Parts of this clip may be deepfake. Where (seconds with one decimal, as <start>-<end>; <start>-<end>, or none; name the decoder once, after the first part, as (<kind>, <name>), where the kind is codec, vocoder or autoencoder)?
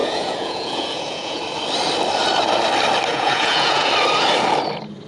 0.0-1.4 (vocoder, Vocos); 3.1-3.9